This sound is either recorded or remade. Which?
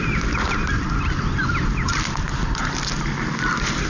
recorded